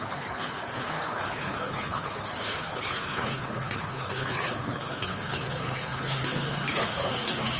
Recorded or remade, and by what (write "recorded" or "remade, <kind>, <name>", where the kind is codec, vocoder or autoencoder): remade, codec, HILCodec